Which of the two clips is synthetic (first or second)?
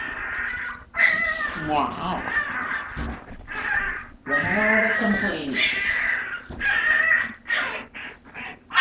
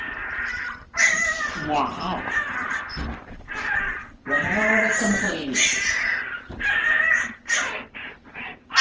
second